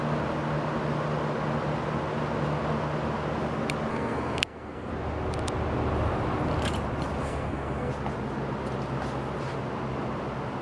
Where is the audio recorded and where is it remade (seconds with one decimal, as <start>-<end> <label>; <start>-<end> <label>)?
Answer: 0.0-3.9 recorded; 3.9-4.9 remade; 4.9-7.2 recorded; 7.2-7.9 remade; 7.9-10.6 recorded